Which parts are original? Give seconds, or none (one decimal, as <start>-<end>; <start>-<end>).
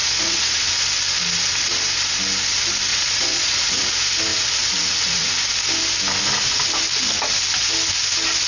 0.7-2.9; 3.9-4.3; 5.3-8.5